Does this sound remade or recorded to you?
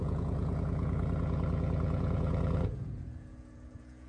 remade